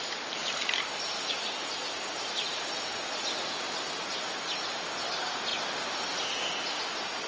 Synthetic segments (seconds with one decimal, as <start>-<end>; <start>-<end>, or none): 0.4-4.8